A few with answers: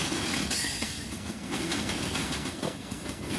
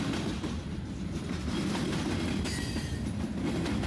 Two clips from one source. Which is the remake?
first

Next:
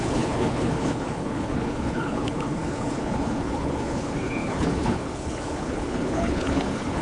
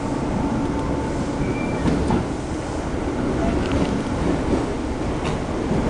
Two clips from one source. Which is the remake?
first